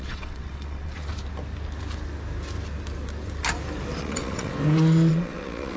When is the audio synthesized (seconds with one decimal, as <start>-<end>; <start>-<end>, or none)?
0.0-1.1; 4.0-4.5; 5.1-5.8